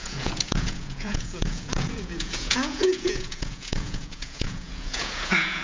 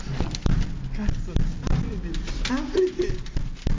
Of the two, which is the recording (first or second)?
second